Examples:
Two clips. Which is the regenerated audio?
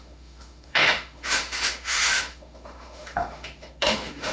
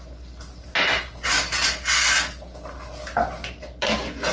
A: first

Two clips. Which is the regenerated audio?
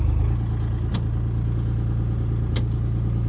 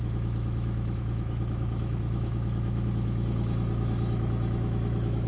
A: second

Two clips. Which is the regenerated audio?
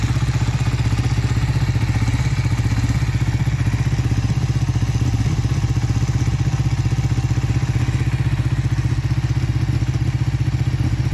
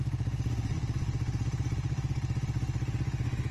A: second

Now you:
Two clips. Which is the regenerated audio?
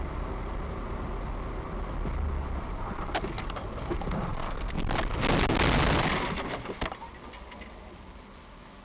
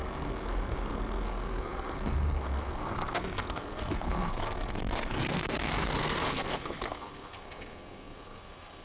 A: second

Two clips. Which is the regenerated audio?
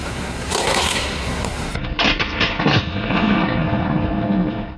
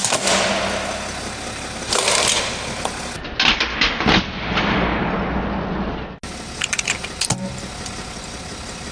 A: first